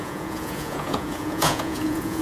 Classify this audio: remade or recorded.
remade